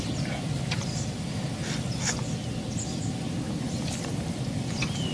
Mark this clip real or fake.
fake